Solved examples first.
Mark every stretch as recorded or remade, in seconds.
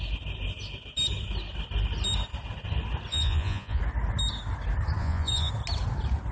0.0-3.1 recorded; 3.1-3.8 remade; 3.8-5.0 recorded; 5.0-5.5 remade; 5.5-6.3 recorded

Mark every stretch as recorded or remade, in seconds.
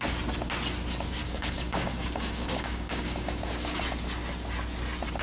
0.0-1.2 recorded; 1.2-3.8 remade; 3.8-5.2 recorded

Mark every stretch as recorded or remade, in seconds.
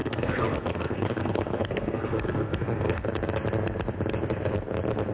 0.0-3.1 remade; 3.1-5.1 recorded